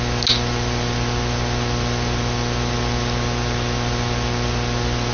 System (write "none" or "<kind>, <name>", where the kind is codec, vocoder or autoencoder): none